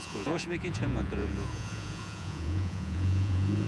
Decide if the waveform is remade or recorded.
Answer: remade